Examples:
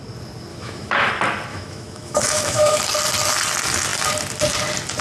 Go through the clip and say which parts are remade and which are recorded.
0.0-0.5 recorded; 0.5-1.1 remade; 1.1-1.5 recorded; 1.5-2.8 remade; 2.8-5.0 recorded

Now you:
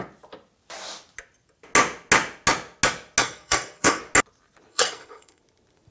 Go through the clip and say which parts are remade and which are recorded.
0.0-3.2 recorded; 3.2-4.0 remade; 4.0-4.7 recorded; 4.7-5.4 remade; 5.4-5.9 recorded

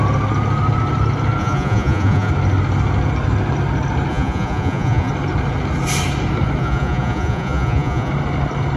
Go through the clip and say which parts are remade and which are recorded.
0.0-1.4 recorded; 1.4-2.3 remade; 2.3-4.1 recorded; 4.1-5.1 remade; 5.1-6.6 recorded; 6.6-8.1 remade; 8.1-8.8 recorded

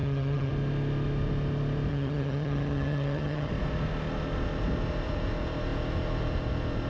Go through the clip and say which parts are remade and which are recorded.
0.0-0.5 remade; 0.5-1.9 recorded; 1.9-3.5 remade; 3.5-6.9 recorded

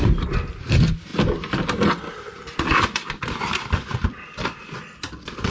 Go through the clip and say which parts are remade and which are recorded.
0.0-1.1 remade; 1.1-1.9 recorded; 1.9-5.5 remade